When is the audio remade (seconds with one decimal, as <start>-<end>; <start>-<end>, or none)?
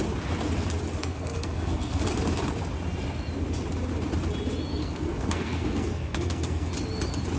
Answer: 1.0-2.0; 4.7-6.7